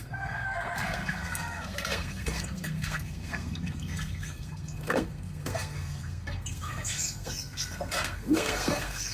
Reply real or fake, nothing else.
fake